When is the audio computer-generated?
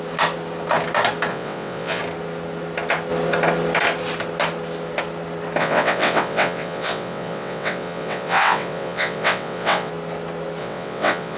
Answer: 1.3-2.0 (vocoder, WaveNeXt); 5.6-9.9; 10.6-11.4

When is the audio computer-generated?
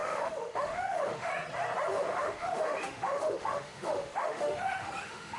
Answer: 0.0-1.3 (autoencoder, DAC-VAE); 1.9-5.4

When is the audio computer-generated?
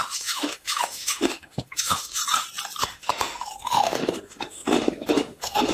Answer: 0.0-2.2 (autoencoder, DAC-VAE); 2.8-5.7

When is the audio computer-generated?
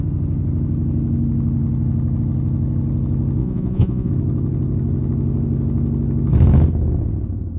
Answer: 3.4-4.1 (vocoder, Vocos)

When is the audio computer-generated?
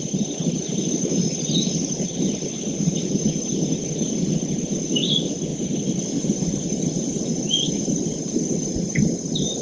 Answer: 5.5-7.7 (vocoder, BigVGAN v2)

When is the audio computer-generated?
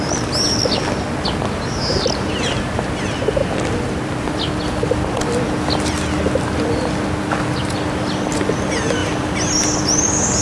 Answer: none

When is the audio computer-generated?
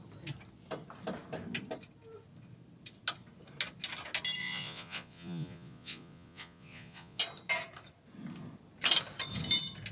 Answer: 4.4-7.2 (vocoder, Vocos)